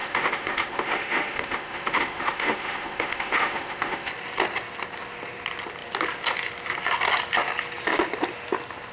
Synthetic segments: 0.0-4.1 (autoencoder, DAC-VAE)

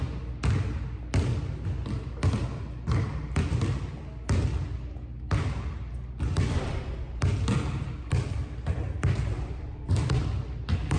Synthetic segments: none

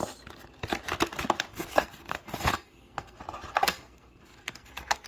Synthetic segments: 1.5-3.2 (codec, SNAC); 3.6-5.1